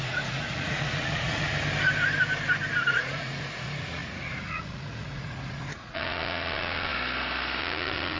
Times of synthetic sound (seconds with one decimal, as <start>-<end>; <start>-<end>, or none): 0.0-1.5; 2.9-6.9; 7.6-8.2